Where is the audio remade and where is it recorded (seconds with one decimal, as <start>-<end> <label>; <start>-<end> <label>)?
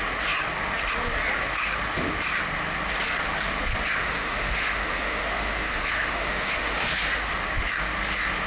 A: 0.0-4.0 recorded; 4.0-7.3 remade; 7.3-8.5 recorded